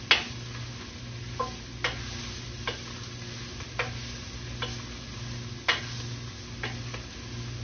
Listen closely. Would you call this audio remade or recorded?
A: recorded